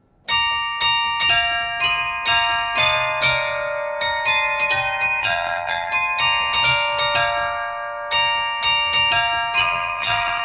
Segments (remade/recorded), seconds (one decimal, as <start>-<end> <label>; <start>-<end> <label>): 0.0-5.2 recorded; 5.2-5.9 remade; 5.9-9.6 recorded; 9.6-10.4 remade